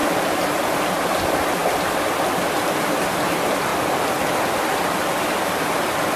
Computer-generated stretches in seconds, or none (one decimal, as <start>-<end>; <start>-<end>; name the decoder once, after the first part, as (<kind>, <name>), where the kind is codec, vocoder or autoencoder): none